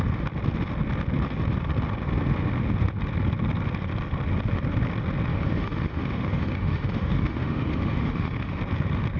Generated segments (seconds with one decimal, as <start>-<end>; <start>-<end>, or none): 5.3-8.6